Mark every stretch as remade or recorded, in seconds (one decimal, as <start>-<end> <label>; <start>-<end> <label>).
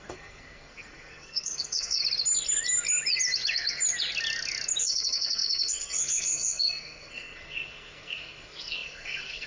0.0-2.0 remade; 2.0-4.8 recorded; 4.8-9.5 remade